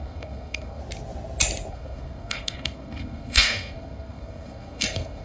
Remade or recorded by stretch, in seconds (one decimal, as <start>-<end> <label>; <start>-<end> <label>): 0.0-0.8 remade; 0.8-1.7 recorded; 1.7-5.2 remade